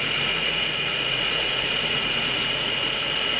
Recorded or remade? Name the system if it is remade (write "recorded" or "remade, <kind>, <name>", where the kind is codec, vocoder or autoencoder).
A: remade, vocoder, Vocos